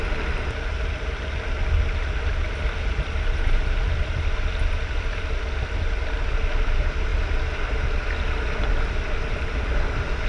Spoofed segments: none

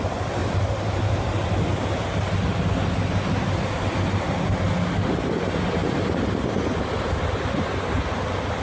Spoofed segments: 0.4-1.2 (vocoder, BigVGAN v2)

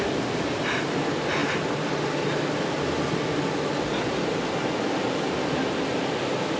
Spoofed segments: none

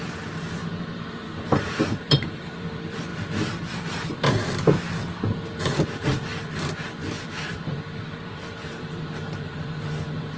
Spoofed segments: 0.0-3.1 (vocoder, BigVGAN v2); 5.6-10.4

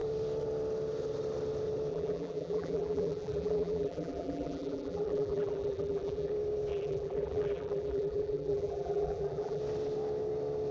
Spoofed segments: 1.9-6.3 (vocoder, BigVGAN v2); 6.7-9.6

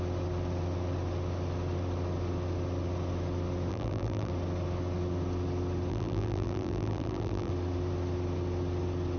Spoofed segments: 3.7-4.3 (vocoder, BigVGAN v2); 5.9-7.5